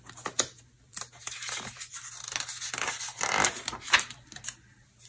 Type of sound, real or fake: real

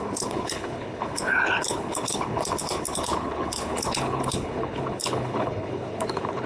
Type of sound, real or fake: fake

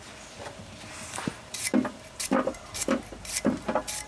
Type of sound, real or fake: real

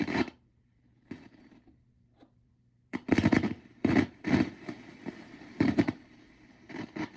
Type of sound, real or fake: fake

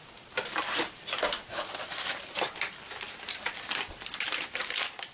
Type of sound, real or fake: fake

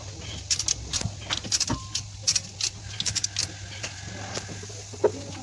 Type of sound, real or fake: real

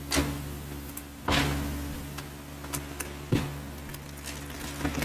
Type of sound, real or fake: real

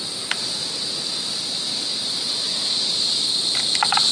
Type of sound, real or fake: fake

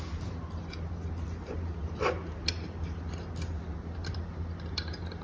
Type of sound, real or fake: real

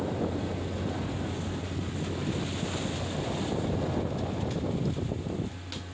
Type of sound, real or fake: real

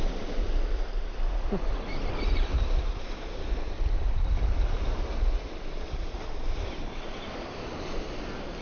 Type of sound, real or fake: real